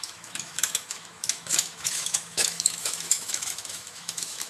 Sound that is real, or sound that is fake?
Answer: fake